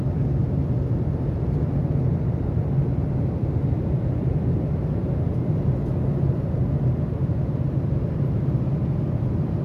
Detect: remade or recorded recorded